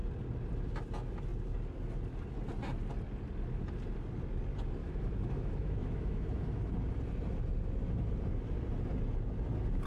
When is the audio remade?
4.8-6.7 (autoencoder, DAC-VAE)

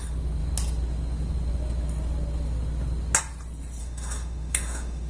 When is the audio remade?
3.8-5.1 (autoencoder, DAC-VAE)

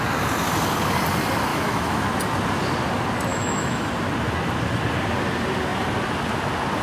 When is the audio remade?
1.5-2.1 (autoencoder, DAC-VAE); 3.3-3.9

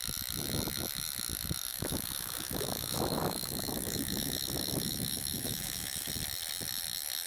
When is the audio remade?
1.7-6.1 (autoencoder, DAC-VAE)

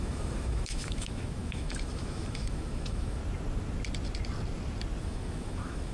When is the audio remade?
0.0-3.2 (autoencoder, DAC-VAE); 5.0-5.9